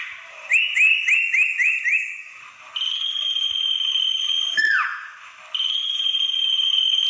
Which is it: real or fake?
real